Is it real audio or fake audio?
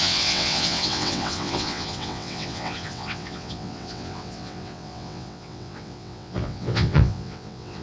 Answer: fake